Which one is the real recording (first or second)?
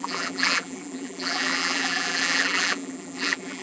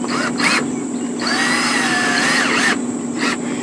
second